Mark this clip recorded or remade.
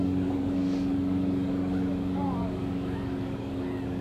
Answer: remade